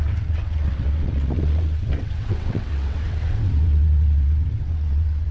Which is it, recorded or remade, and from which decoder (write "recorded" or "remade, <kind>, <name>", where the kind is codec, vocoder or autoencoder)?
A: remade, vocoder, WaveNeXt